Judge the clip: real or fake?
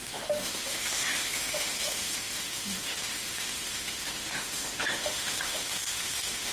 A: fake